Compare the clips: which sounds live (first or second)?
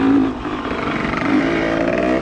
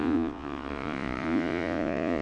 first